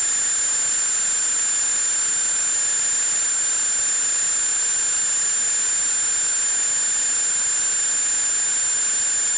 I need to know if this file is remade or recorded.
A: recorded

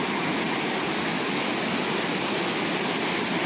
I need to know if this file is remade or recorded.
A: recorded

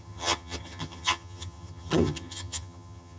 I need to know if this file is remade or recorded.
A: remade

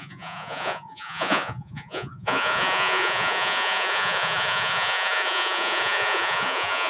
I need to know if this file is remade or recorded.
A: remade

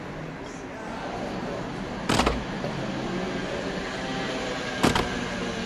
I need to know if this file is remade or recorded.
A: recorded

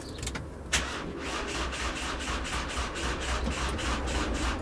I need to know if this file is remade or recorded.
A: recorded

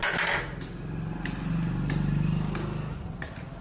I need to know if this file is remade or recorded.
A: recorded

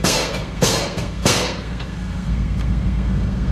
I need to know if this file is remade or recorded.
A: remade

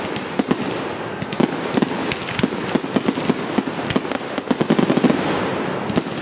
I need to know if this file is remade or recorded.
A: recorded